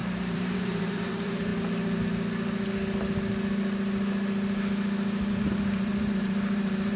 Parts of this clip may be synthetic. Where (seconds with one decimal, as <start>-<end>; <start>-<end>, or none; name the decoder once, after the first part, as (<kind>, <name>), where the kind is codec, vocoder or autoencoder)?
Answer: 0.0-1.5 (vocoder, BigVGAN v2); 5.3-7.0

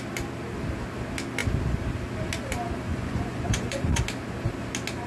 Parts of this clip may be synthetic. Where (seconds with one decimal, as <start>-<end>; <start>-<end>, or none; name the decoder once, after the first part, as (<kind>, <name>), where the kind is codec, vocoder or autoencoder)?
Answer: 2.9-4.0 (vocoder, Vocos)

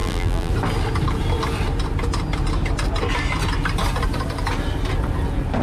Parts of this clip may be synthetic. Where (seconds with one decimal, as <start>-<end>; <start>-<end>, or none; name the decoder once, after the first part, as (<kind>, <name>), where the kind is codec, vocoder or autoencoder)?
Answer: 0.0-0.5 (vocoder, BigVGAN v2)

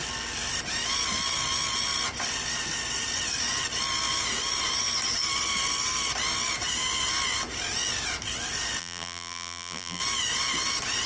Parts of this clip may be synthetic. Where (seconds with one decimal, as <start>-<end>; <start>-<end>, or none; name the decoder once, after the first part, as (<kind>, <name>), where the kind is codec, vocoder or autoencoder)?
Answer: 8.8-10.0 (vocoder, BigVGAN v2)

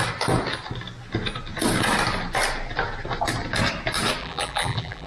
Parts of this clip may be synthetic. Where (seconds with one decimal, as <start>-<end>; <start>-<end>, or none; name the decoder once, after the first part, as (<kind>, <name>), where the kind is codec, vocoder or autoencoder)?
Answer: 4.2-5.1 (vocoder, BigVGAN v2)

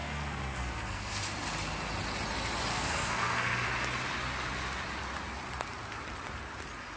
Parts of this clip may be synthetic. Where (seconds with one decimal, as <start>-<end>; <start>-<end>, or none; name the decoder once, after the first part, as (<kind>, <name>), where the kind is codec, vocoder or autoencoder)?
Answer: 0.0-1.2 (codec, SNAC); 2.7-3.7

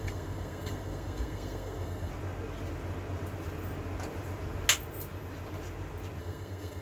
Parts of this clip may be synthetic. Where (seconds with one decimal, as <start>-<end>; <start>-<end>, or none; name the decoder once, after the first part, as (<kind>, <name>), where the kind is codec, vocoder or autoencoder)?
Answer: 0.0-2.1 (codec, SNAC); 6.2-6.8